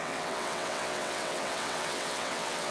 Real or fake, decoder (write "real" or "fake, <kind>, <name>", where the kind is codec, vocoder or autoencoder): fake, vocoder, WaveNeXt